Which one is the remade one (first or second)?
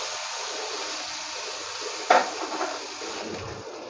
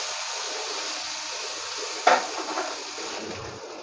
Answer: first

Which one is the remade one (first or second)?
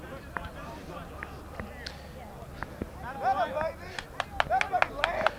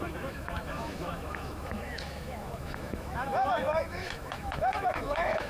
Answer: second